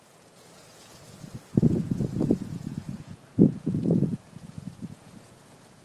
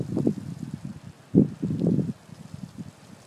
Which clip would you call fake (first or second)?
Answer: first